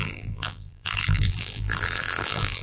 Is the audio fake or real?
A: fake